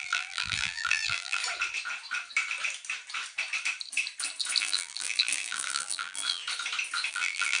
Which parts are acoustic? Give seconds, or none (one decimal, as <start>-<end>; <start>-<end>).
1.4-4.6; 6.4-7.1